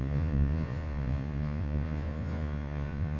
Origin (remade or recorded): remade